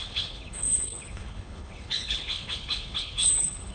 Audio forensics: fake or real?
fake